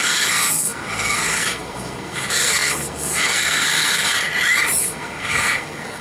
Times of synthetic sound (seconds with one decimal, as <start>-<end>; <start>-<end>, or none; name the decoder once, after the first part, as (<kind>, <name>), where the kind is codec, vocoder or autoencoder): 0.0-4.3 (codec, SNAC); 4.8-6.0